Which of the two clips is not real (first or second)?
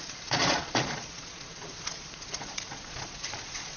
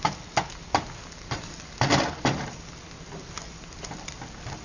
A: first